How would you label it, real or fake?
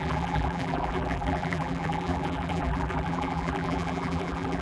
fake